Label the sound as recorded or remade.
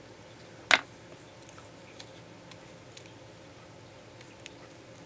recorded